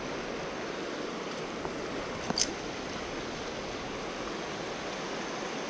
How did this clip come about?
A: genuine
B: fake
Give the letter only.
A